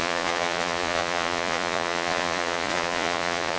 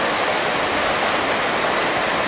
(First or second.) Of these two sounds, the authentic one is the second